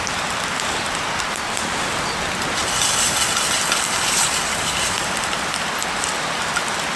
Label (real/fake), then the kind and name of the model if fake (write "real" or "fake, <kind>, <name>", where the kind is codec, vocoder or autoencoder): real